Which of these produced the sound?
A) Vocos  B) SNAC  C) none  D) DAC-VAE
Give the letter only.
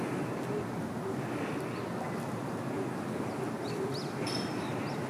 C